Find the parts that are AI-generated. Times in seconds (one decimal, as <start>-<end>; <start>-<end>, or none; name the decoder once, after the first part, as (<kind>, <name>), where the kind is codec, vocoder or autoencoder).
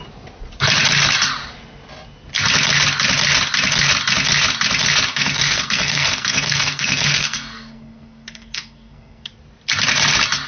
5.1-9.3 (codec, SNAC)